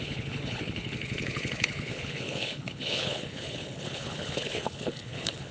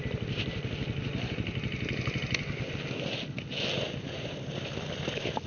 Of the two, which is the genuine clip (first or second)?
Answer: second